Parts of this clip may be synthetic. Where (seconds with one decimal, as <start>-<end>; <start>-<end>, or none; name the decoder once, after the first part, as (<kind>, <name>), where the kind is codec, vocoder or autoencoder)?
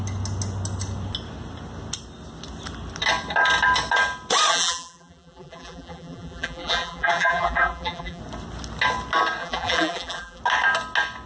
4.5-8.2 (vocoder, BigVGAN v2); 9.4-10.4